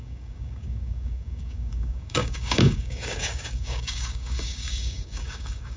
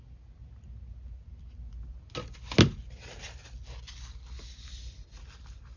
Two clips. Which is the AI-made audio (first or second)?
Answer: first